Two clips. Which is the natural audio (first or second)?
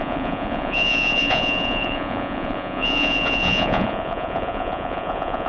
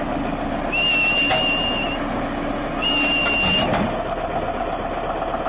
second